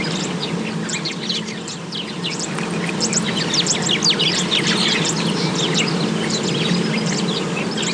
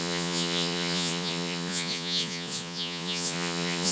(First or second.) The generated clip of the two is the second